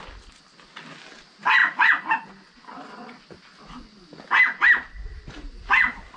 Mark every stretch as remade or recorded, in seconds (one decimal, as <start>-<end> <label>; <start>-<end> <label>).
0.0-6.2 recorded